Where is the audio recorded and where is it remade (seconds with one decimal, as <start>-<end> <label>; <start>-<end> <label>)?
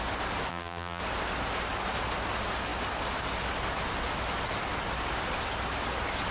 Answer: 0.0-0.5 recorded; 0.5-1.0 remade; 1.0-6.3 recorded